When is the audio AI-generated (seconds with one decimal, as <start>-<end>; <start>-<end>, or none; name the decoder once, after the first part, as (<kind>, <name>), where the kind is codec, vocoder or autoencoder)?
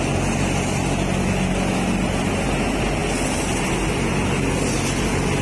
none